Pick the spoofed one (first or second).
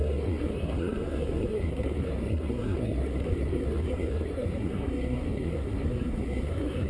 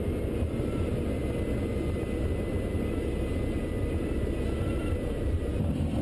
first